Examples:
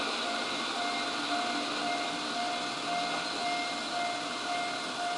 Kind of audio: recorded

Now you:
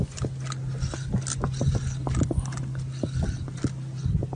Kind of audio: recorded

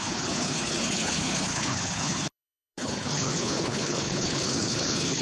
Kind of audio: remade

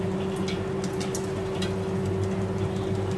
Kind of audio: recorded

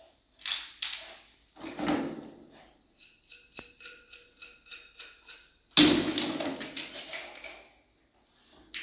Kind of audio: recorded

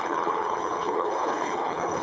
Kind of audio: remade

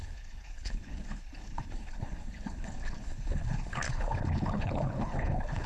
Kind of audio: remade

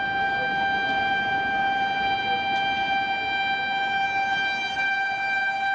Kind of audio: recorded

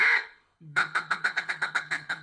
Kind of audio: remade